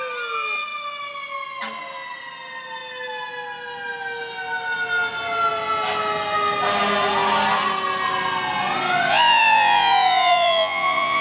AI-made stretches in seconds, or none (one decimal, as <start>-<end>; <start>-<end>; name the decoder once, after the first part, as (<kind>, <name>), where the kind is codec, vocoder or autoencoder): 9.1-11.2 (vocoder, Vocos)